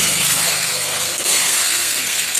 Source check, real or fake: fake